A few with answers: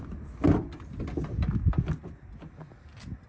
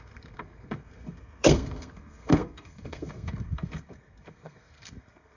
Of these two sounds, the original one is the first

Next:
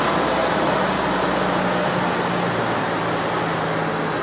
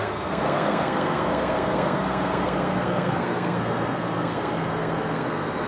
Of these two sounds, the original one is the first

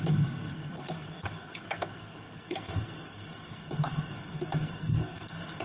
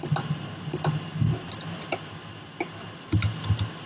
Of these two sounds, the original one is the second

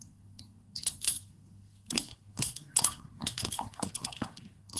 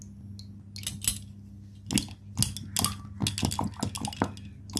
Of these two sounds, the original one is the second